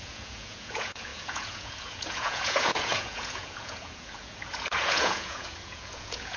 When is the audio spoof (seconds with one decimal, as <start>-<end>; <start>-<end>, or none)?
0.0-6.4